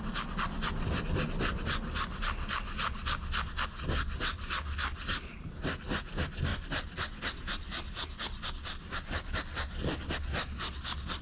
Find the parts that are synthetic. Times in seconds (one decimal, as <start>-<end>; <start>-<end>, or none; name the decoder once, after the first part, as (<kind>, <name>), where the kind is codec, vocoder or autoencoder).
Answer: none